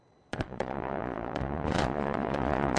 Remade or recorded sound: remade